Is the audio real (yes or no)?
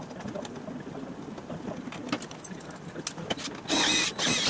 yes